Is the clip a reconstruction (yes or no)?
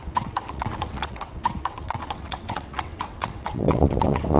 yes